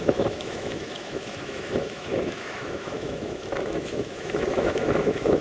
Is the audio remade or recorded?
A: remade